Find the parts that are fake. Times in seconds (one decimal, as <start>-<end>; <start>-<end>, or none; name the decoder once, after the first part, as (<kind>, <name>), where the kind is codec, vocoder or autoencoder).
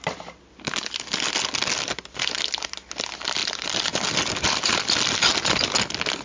3.4-5.2 (vocoder, BigVGAN v2)